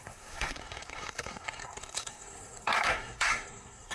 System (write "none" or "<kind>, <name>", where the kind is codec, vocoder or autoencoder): codec, SNAC